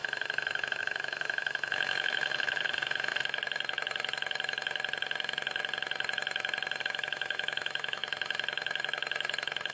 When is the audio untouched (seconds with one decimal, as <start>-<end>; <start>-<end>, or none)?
3.1-6.8; 8.0-9.7